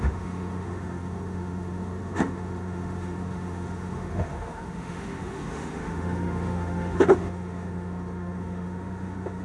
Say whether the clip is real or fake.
fake